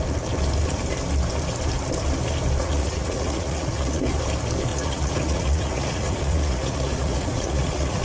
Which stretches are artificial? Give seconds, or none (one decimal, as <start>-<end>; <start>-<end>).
2.6-4.1; 4.7-8.0